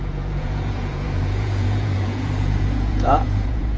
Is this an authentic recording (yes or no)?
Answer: no